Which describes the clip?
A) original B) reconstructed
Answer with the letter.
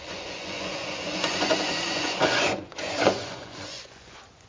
B